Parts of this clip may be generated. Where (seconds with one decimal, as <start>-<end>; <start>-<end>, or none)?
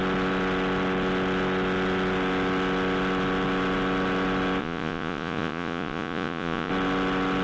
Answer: 4.6-6.7